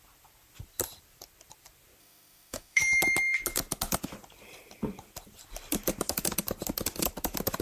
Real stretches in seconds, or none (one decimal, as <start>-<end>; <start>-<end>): 0.0-2.0; 2.8-7.6